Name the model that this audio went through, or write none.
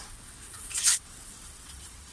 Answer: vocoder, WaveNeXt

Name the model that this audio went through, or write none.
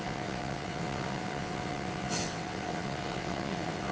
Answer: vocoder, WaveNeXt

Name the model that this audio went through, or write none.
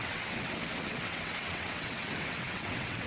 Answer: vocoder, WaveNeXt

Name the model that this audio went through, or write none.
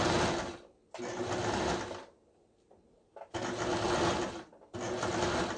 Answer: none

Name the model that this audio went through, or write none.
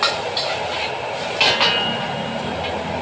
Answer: none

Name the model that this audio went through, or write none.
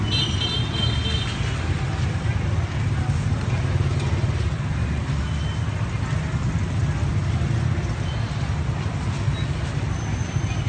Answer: none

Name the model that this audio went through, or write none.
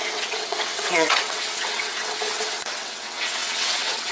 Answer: vocoder, WaveNeXt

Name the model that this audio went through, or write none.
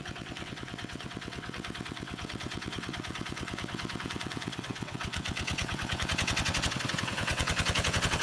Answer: vocoder, WaveNeXt